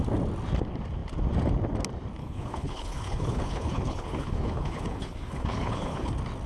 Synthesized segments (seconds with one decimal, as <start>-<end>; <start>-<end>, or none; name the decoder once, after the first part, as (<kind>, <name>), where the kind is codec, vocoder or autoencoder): 2.2-6.1 (codec, HILCodec)